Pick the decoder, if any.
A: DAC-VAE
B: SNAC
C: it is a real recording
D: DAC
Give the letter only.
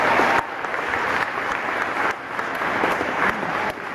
C